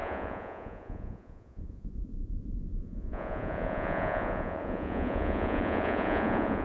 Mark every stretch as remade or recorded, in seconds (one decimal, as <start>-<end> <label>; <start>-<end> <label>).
0.0-6.6 remade

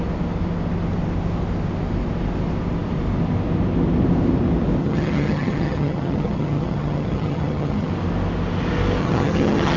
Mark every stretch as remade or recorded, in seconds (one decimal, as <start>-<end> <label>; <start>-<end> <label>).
0.0-4.8 recorded; 4.8-7.9 remade; 7.9-9.0 recorded; 9.0-9.8 remade